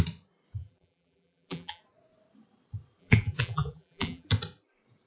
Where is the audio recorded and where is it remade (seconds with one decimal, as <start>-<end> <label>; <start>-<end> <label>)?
0.0-0.6 recorded; 0.6-1.8 remade; 1.8-3.0 recorded; 3.0-4.3 remade; 4.3-5.1 recorded